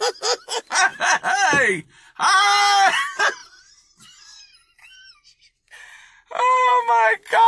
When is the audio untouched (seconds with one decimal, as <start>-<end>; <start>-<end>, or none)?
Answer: 0.0-3.4; 6.7-7.5